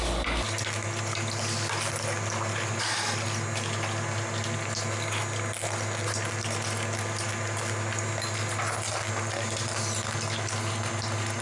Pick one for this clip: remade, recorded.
recorded